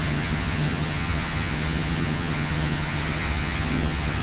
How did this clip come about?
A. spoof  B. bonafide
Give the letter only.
A